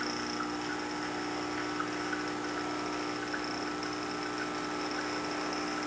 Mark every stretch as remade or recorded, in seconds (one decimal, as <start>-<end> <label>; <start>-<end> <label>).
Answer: 0.0-5.9 recorded